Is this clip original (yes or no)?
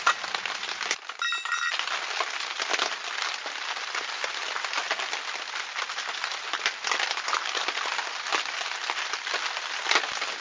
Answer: yes